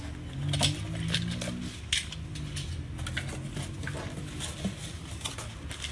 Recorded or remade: recorded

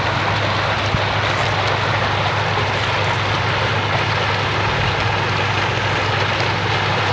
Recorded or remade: recorded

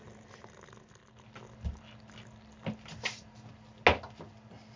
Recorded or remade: recorded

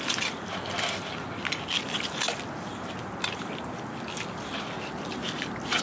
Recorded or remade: recorded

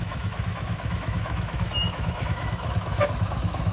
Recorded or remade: remade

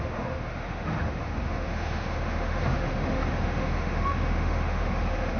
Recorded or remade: remade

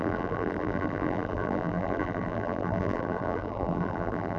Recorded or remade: remade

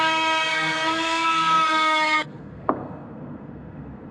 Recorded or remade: remade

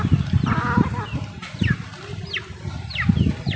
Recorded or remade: recorded